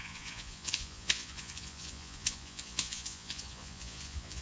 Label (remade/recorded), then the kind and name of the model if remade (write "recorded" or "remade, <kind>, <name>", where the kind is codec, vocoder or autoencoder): remade, vocoder, Vocos